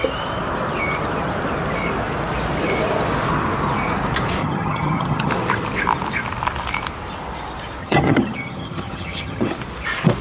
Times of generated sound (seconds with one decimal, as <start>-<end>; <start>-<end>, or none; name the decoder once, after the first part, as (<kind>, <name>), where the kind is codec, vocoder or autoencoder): 4.4-5.3 (vocoder, HiFi-GAN); 7.8-9.5